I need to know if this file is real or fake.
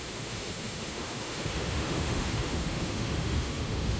fake